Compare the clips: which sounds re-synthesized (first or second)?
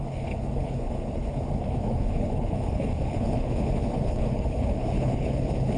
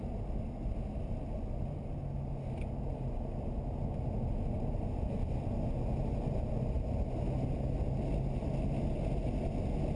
first